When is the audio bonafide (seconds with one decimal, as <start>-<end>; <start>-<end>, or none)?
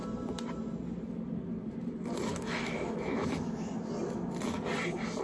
0.0-2.3; 3.7-5.2